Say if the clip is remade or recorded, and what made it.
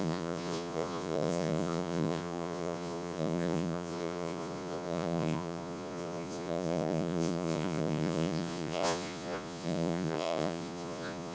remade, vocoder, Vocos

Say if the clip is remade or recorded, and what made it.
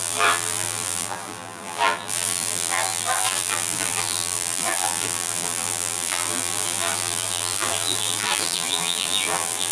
remade, vocoder, BigVGAN v2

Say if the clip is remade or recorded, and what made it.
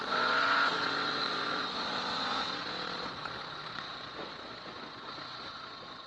remade, vocoder, Vocos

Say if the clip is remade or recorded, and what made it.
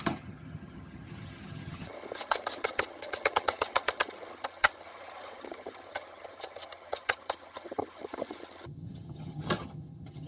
remade, vocoder, HiFi-GAN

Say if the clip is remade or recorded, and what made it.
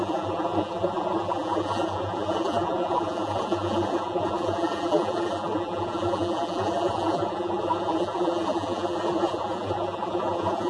remade, vocoder, BigVGAN v2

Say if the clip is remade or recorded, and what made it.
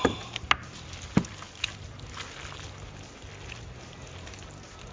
recorded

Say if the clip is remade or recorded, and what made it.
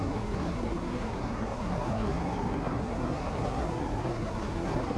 remade, codec, SNAC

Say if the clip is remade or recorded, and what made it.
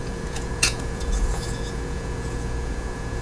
remade, vocoder, Vocos